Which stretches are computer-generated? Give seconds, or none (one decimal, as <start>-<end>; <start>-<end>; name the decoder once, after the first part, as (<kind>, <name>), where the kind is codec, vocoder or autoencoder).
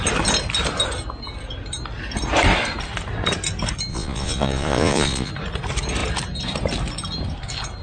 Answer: 3.9-5.3 (vocoder, Vocos)